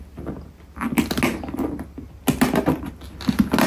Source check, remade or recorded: recorded